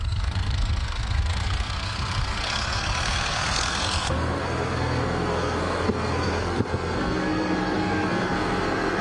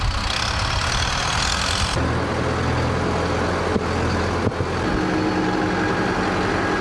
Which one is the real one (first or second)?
second